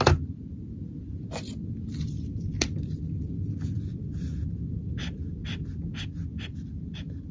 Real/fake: real